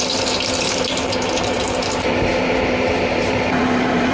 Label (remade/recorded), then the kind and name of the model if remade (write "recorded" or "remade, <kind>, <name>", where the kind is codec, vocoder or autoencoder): remade, vocoder, BigVGAN v2